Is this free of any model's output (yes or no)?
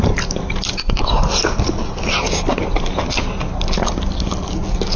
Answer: yes